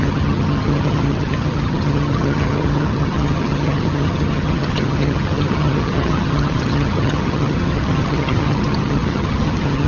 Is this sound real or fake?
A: fake